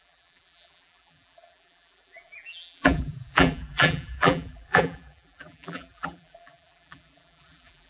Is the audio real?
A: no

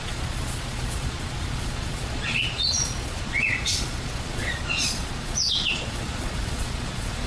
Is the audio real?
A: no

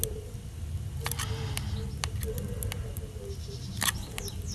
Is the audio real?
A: yes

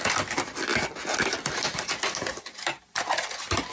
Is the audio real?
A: yes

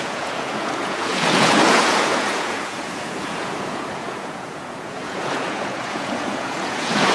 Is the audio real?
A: no